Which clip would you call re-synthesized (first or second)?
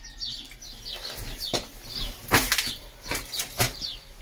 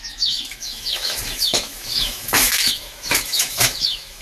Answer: second